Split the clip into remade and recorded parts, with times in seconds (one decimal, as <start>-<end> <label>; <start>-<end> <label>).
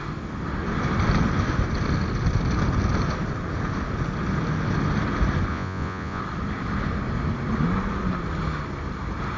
0.0-5.5 recorded; 5.5-6.2 remade; 6.2-9.4 recorded